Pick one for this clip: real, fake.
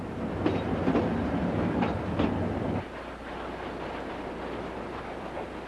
real